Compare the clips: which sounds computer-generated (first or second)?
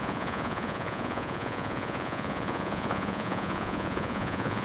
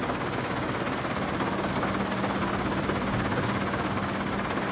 first